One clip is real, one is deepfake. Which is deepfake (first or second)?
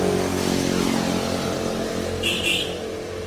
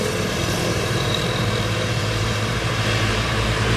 second